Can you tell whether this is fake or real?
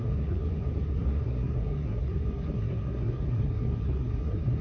fake